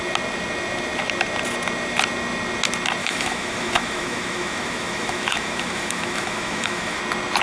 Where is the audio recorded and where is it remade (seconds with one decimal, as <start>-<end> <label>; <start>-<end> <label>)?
0.0-3.0 recorded; 3.0-7.0 remade; 7.0-7.4 recorded